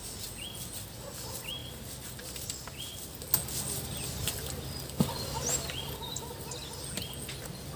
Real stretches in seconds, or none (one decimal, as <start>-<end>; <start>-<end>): 0.0-7.8